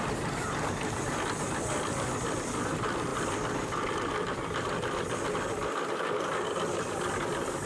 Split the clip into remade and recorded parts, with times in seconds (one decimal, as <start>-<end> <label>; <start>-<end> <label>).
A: 0.0-7.7 recorded